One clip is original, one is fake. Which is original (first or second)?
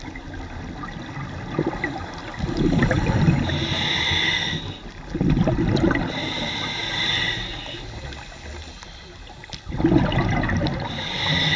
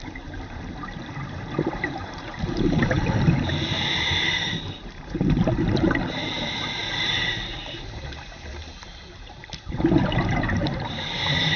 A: first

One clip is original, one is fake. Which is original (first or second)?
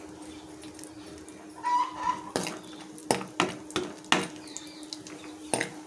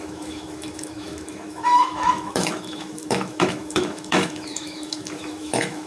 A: first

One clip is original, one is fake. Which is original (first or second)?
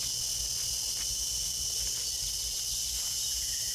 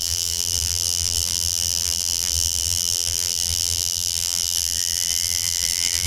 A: first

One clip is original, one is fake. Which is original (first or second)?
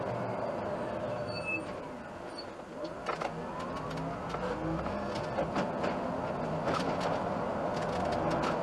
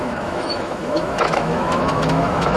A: first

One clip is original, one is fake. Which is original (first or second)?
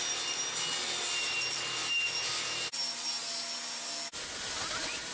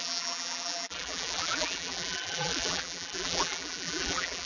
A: first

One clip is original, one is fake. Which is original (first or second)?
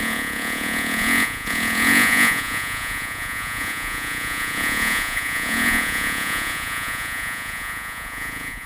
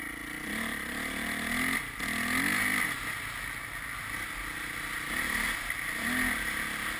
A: second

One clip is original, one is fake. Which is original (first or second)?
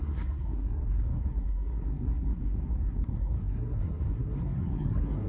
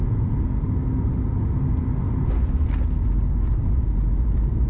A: second